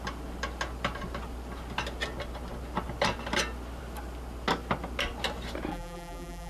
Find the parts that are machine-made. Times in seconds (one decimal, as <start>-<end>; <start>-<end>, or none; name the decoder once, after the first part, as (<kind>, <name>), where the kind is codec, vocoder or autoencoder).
5.7-6.5 (vocoder, BigVGAN v2)